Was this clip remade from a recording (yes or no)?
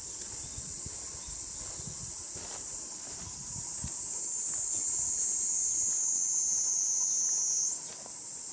no